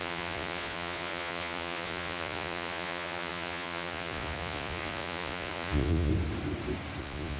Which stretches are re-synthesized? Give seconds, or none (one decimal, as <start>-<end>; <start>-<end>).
0.0-6.1; 7.0-7.4